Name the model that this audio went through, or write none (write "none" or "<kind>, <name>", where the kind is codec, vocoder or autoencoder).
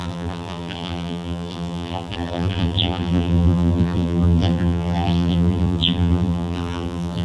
vocoder, BigVGAN v2